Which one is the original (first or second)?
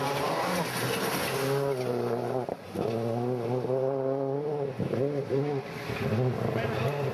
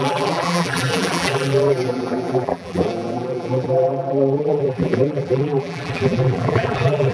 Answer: first